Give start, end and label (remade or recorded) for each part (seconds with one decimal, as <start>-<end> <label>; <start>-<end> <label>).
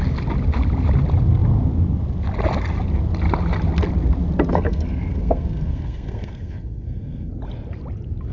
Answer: 0.0-4.5 recorded; 4.5-7.3 remade; 7.3-8.3 recorded